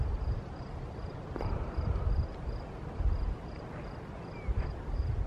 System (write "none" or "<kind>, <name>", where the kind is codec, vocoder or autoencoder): none